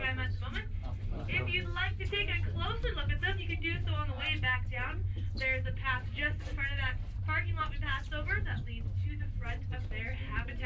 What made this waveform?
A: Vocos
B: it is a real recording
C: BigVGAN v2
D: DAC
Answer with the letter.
B